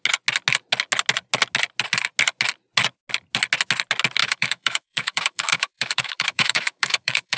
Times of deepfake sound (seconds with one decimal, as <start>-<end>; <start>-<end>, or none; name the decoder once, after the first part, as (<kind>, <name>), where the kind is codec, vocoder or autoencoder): 4.2-7.4 (autoencoder, DAC-VAE)